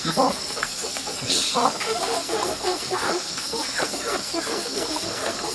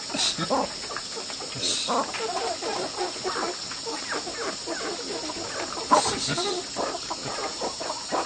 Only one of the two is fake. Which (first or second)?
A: first